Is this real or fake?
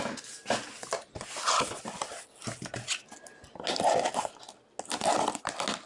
real